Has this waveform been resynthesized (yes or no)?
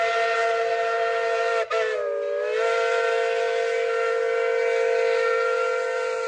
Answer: no